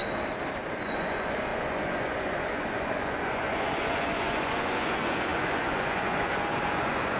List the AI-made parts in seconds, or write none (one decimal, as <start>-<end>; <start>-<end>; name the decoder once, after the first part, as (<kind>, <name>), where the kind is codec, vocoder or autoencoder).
0.8-7.2 (vocoder, Vocos)